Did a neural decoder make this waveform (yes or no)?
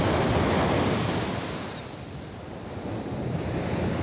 no